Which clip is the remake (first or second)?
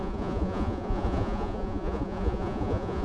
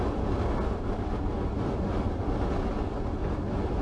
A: first